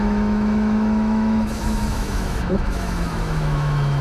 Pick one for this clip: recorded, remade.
remade